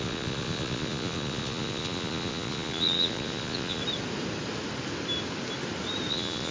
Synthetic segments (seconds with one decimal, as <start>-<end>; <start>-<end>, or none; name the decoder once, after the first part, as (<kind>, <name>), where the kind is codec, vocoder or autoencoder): 0.0-3.8 (vocoder, Vocos); 6.1-6.5